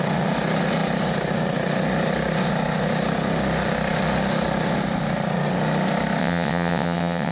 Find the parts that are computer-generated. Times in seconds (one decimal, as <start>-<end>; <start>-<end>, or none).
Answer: 6.2-7.3